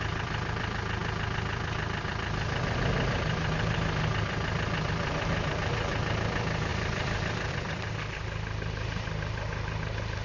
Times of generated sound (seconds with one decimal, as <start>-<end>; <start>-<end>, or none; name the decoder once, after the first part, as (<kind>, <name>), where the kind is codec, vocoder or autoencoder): 0.0-10.2 (vocoder, BigVGAN v2)